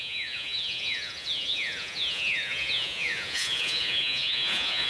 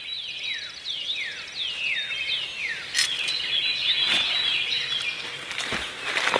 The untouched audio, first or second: second